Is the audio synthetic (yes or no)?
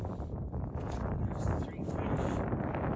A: no